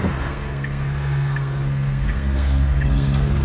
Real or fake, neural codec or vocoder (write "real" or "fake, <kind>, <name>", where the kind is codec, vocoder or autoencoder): fake, codec, SNAC